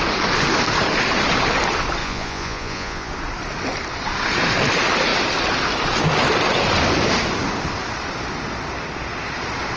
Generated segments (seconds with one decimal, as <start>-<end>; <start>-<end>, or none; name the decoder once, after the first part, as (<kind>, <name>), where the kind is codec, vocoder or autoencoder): 2.0-3.1 (vocoder, Vocos)